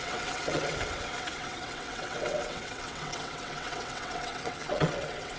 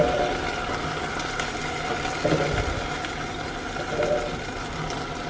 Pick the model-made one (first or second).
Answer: first